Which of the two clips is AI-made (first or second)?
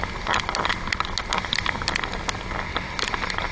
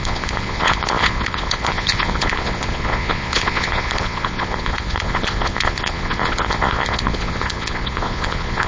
second